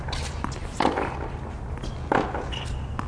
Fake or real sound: real